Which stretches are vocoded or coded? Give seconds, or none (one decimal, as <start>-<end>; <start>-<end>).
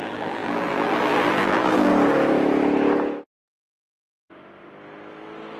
0.0-1.9